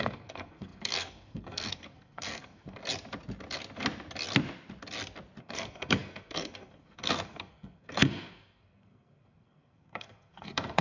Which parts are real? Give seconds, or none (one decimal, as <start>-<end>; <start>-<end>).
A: 2.8-5.4